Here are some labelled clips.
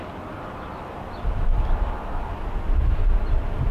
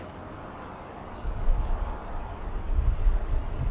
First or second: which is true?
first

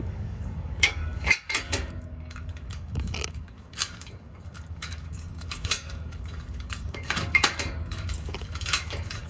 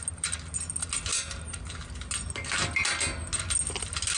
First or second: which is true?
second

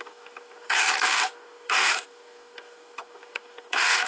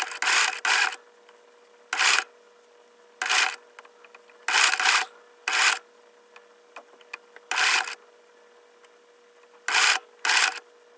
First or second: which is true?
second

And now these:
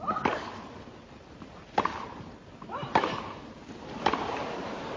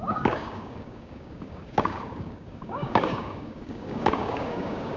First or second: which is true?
first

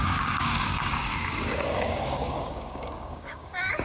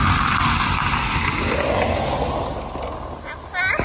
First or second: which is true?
second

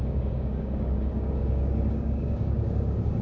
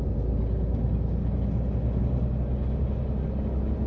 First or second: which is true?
second